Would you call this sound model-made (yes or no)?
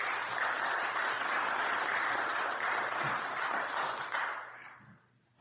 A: no